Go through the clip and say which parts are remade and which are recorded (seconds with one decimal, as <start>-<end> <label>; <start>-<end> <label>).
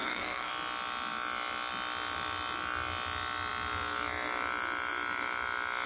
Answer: 0.0-0.5 remade; 0.5-5.9 recorded